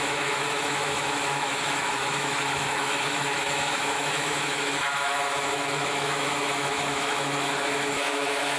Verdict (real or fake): fake